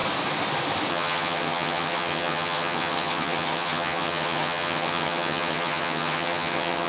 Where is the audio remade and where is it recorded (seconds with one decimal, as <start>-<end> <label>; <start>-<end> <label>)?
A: 0.0-0.9 recorded; 0.9-6.9 remade